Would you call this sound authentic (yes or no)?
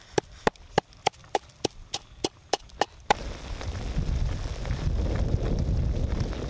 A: yes